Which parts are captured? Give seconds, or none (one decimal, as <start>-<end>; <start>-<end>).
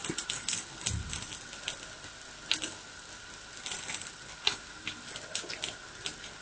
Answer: 0.0-6.4